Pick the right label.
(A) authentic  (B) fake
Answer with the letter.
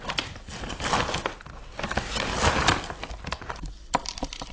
A